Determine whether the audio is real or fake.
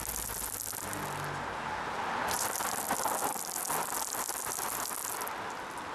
real